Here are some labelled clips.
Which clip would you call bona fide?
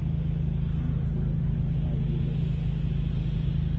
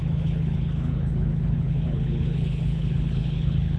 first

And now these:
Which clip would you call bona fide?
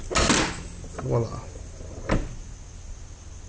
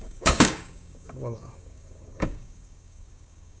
first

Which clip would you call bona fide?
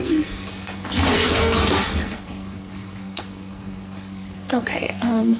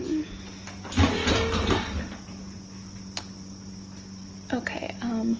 second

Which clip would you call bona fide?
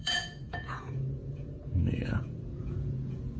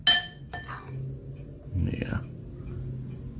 second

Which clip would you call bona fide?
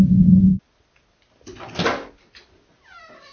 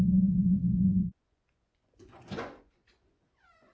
first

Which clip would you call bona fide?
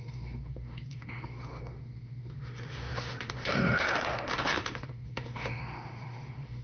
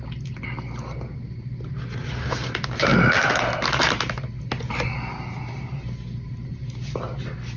second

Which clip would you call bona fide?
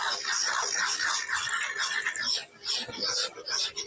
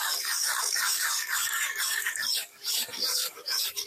first